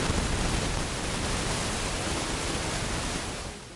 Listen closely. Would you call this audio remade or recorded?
recorded